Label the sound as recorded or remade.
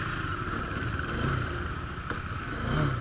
recorded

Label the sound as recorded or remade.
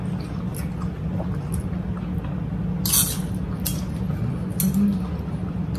recorded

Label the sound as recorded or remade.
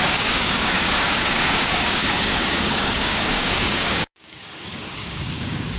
remade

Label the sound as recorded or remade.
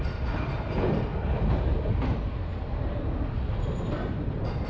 recorded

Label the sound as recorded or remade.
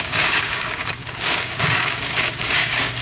remade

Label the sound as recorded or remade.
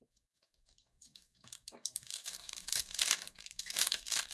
remade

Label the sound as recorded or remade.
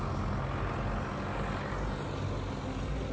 recorded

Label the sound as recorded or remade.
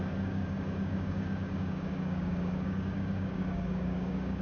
remade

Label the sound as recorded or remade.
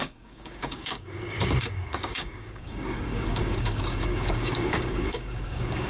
remade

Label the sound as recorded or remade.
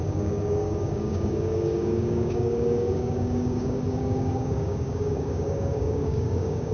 remade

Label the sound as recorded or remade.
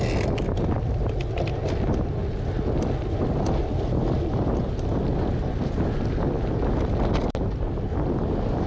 recorded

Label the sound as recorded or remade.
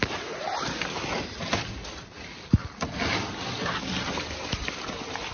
recorded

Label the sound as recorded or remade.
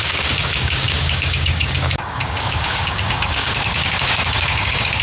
remade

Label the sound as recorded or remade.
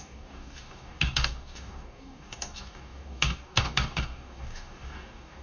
remade